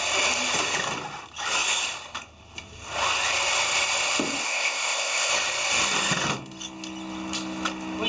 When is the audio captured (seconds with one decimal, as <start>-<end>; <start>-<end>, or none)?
0.0-4.4; 5.3-8.1